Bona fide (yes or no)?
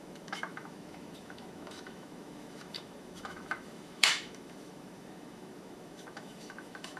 no